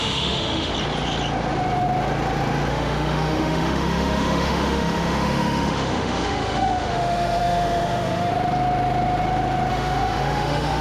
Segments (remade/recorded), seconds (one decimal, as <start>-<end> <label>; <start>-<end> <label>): 0.0-0.7 remade; 0.7-2.7 recorded; 2.7-8.3 remade; 8.3-9.7 recorded; 9.7-10.8 remade